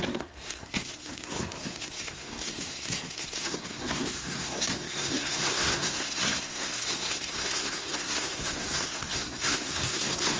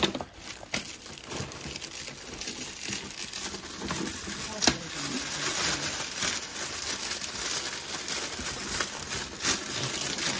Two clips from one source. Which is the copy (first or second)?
first